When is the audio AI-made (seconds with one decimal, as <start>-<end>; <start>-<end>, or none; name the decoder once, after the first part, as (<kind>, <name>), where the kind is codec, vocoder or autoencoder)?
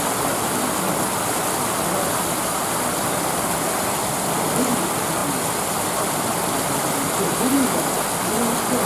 none